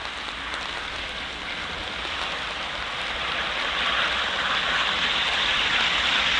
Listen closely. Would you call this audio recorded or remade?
recorded